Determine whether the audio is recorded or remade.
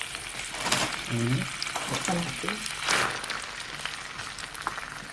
recorded